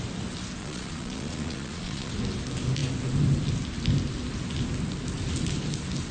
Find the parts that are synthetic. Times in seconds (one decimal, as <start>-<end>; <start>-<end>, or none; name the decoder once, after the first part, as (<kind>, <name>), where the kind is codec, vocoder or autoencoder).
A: 0.6-2.1 (vocoder, Vocos)